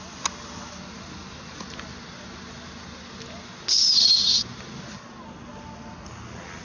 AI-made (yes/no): no